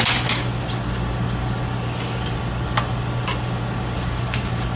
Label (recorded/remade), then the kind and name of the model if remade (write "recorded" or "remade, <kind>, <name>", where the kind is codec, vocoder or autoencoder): recorded